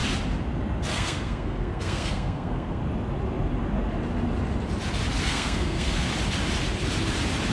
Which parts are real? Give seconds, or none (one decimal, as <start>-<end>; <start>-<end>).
0.0-0.9; 2.8-5.2; 6.1-7.5